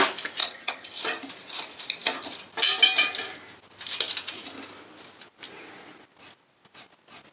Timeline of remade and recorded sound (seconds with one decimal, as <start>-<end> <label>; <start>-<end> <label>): 0.0-0.4 recorded; 0.4-1.0 remade; 1.0-7.3 recorded